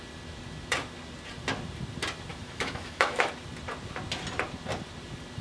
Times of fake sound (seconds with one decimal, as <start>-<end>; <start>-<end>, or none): 2.3-3.3